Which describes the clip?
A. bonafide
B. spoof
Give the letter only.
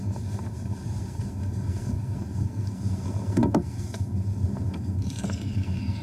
B